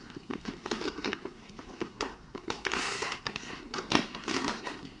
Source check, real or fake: fake